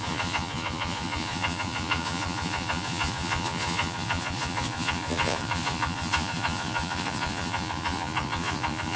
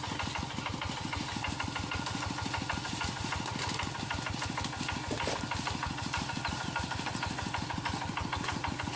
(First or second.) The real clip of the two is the second